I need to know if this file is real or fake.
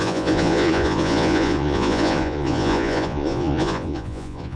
fake